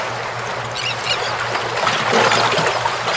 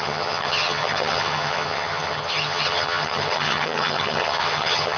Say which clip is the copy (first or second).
second